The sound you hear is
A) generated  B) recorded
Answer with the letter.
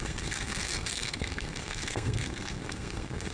A